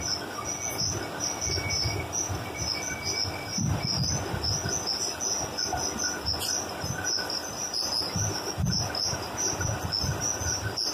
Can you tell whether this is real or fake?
real